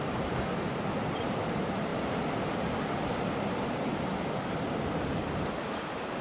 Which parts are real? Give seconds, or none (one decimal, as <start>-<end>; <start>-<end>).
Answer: 0.0-6.2